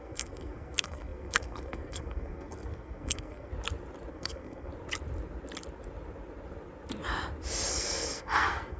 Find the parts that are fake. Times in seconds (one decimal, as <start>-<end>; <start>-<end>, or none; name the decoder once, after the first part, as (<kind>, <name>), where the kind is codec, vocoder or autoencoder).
0.0-3.5 (codec, SNAC); 4.1-4.7; 7.7-8.8